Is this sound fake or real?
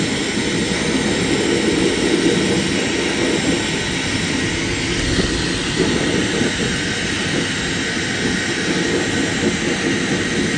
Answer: real